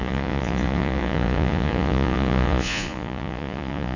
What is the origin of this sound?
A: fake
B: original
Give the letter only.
A